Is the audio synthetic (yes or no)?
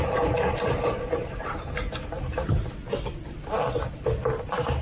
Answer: no